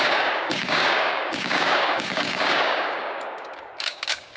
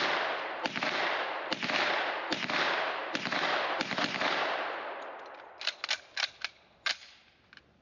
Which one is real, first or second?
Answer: second